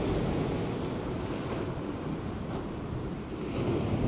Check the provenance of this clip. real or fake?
real